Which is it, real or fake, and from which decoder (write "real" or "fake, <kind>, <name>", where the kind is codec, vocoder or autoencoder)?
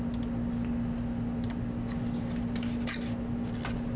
real